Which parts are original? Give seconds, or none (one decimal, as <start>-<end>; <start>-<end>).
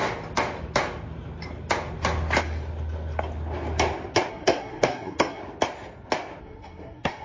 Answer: 0.0-4.3; 5.4-6.4